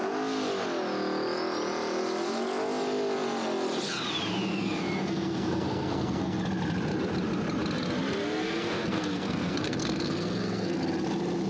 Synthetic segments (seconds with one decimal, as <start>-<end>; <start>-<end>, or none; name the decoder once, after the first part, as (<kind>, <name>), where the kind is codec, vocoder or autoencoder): 4.5-6.4 (codec, SNAC); 8.4-10.8